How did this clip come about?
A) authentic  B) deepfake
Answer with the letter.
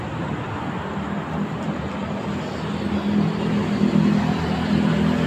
A